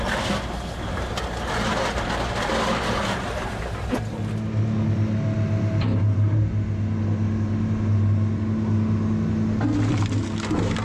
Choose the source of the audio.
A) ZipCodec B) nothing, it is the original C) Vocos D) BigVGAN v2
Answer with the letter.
B